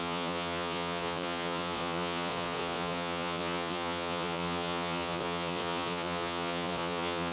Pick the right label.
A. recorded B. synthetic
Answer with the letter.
B